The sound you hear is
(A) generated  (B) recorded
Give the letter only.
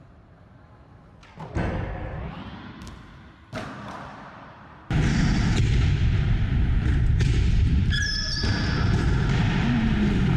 A